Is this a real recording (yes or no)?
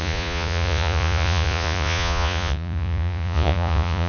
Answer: no